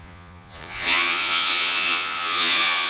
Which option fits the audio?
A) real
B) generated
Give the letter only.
B